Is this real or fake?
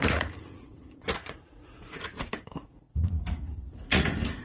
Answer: fake